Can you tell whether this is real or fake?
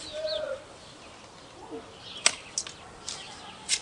real